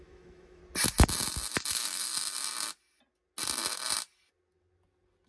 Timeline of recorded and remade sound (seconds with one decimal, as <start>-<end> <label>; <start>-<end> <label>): 0.0-0.6 remade; 0.6-1.7 recorded; 1.7-2.1 remade; 2.1-5.3 recorded

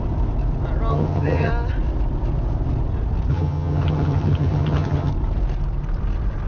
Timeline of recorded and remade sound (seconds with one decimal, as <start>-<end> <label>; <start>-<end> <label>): 0.0-0.9 recorded; 0.9-1.5 remade; 1.5-3.3 recorded; 3.3-5.1 remade; 5.1-6.5 recorded

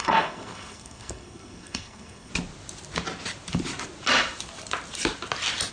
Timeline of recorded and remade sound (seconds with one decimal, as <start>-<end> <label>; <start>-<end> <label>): 0.0-2.3 remade; 2.3-5.7 recorded

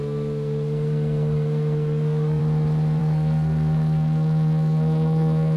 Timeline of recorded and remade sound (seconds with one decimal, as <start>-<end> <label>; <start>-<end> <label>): 0.0-2.4 remade; 2.4-3.0 recorded; 3.0-5.6 remade

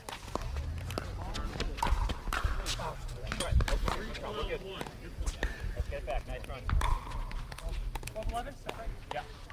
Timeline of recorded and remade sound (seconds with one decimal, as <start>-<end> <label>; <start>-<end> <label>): 0.0-2.0 recorded; 2.0-5.9 remade; 5.9-6.9 recorded; 6.9-8.7 remade; 8.7-9.5 recorded

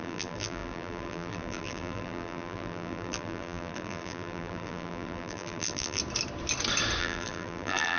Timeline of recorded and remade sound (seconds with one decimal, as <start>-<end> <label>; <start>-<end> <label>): 0.0-6.0 remade; 6.0-7.0 recorded; 7.0-8.0 remade

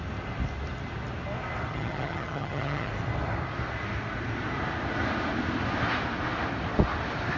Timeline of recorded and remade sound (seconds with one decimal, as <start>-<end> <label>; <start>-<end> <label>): 0.0-1.7 recorded; 1.7-2.9 remade; 2.9-7.4 recorded

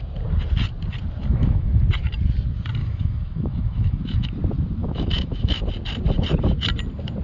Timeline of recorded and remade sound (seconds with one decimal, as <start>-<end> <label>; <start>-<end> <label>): 0.0-1.2 recorded; 1.2-1.8 remade; 1.8-2.8 recorded; 2.8-4.3 remade; 4.3-4.8 recorded; 4.8-5.6 remade; 5.6-7.2 recorded